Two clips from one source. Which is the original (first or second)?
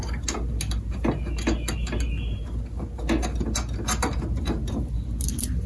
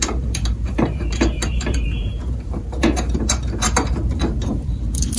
first